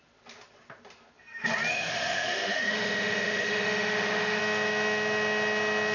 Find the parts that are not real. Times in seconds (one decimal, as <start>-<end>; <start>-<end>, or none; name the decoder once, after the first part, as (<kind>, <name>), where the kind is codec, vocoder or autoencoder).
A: 1.7-4.4 (autoencoder, DAC-VAE)